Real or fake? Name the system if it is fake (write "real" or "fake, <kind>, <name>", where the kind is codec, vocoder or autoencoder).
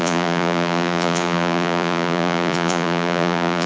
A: fake, vocoder, Vocos